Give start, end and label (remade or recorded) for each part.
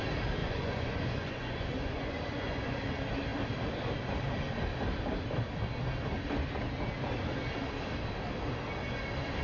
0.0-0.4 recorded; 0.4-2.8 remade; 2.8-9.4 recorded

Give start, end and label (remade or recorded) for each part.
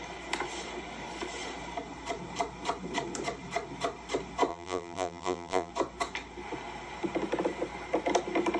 0.0-4.5 recorded; 4.5-5.7 remade; 5.7-8.6 recorded